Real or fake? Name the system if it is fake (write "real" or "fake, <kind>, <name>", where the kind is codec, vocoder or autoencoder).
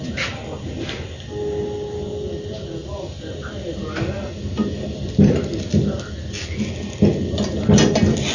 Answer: real